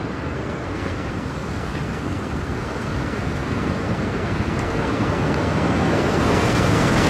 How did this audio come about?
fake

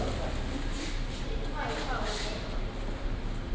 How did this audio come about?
real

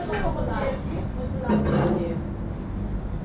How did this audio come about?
real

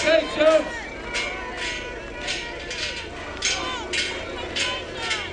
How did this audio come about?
real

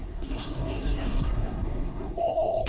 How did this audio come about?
fake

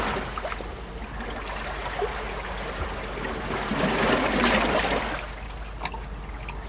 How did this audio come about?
real